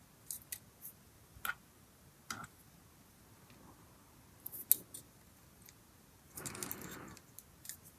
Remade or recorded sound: recorded